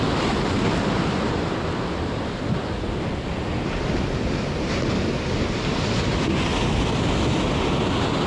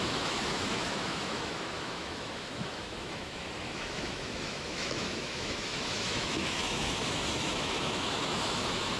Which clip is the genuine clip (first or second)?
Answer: first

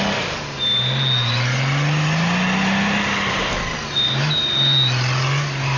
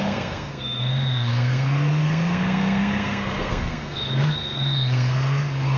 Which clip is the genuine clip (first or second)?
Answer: first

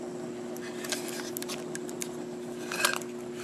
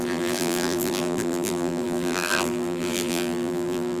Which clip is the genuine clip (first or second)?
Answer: first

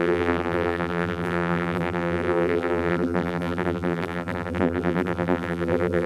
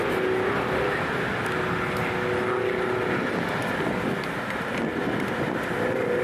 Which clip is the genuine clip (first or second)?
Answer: second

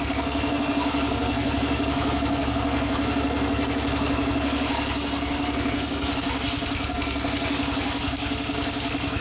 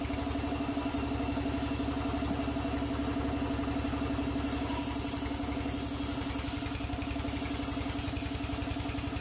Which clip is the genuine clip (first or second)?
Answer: second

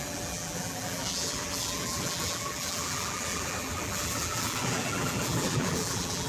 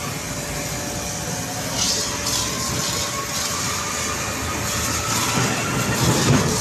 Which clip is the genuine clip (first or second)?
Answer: second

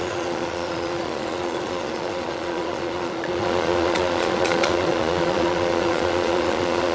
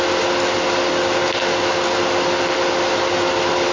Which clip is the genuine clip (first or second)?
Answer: second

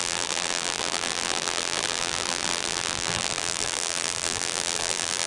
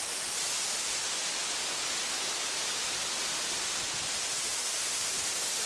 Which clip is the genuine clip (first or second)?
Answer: second